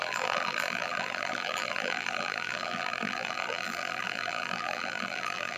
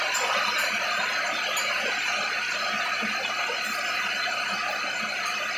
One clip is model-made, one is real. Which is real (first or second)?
second